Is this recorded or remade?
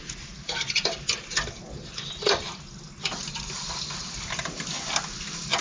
recorded